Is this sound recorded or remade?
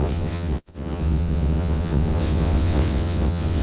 remade